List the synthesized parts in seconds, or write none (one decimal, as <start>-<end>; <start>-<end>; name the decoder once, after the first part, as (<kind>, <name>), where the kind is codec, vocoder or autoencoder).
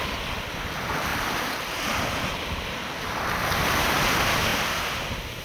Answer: none